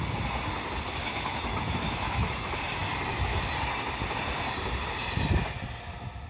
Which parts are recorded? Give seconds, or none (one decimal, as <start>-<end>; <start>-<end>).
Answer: 0.0-1.0; 2.4-6.3